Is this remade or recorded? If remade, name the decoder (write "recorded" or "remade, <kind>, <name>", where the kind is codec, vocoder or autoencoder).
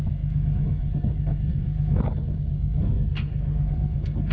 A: remade, codec, SNAC